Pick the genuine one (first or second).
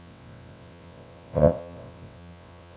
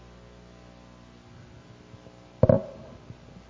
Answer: second